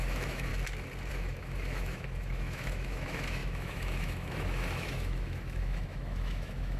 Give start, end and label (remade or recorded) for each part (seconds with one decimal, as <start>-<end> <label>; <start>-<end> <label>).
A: 0.0-0.5 remade; 0.5-1.1 recorded; 1.1-6.8 remade